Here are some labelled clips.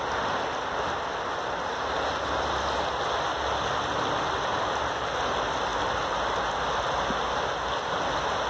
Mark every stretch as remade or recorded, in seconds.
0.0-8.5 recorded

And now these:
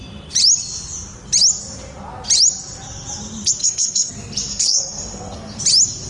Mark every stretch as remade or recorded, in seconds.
0.0-3.6 recorded; 3.6-4.1 remade; 4.1-4.5 recorded; 4.5-5.6 remade; 5.6-6.1 recorded

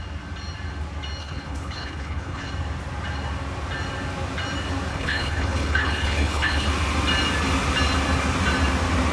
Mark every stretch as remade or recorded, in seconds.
0.0-1.2 recorded; 1.2-2.5 remade; 2.5-4.9 recorded; 4.9-6.7 remade; 6.7-9.1 recorded